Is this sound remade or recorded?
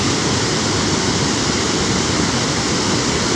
recorded